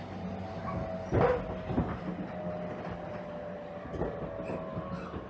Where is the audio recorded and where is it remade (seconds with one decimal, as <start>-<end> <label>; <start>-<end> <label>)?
0.0-5.3 recorded

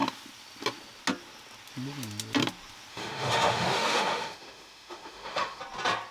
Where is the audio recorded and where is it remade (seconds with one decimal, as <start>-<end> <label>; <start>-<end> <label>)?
0.0-2.9 recorded; 2.9-5.6 remade; 5.6-6.1 recorded

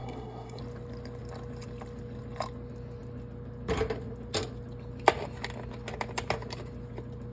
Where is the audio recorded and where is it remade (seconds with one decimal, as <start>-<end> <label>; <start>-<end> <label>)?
0.0-0.6 remade; 0.6-7.3 recorded